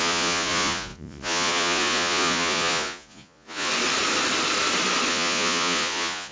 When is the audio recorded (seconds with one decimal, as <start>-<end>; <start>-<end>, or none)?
3.7-5.1

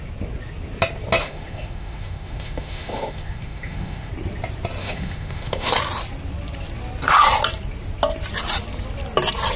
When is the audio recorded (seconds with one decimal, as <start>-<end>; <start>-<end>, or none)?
0.0-1.2; 4.1-4.8; 5.7-9.6

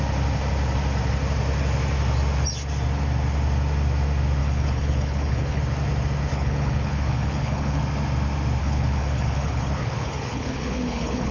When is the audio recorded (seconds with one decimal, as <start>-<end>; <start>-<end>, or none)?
0.0-4.4; 5.6-6.3; 7.8-8.6

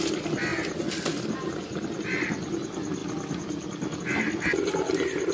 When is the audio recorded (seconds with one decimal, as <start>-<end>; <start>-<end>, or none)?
0.0-5.3